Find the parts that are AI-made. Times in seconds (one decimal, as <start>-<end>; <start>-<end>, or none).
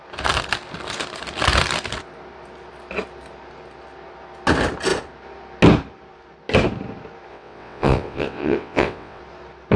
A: 7.3-9.2